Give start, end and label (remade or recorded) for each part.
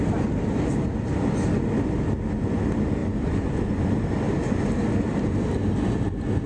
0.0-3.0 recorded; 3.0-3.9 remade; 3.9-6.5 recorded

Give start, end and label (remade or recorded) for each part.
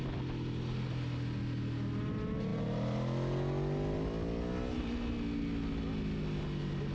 0.0-6.9 recorded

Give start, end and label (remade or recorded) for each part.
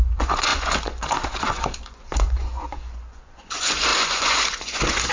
0.0-5.1 remade